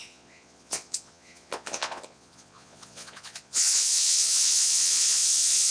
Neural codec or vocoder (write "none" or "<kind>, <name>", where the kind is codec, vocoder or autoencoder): vocoder, Vocos